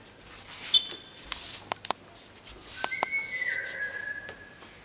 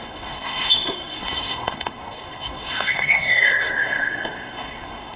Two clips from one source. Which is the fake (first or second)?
second